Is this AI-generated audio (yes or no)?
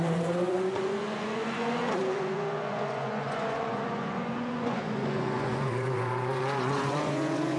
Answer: yes